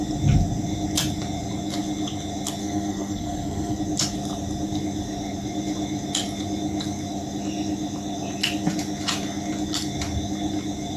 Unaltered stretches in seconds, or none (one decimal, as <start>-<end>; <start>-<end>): 0.0-2.6; 3.8-11.0